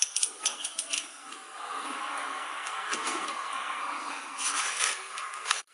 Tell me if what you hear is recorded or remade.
remade